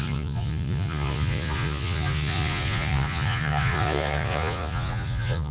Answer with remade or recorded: remade